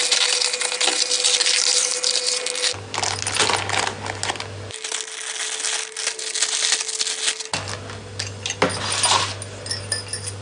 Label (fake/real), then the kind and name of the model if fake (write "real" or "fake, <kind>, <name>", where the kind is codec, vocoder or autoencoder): real